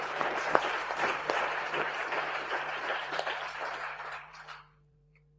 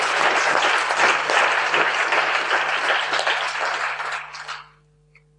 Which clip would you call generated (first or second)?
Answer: first